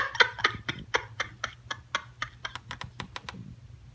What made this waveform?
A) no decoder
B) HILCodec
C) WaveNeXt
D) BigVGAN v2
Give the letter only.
A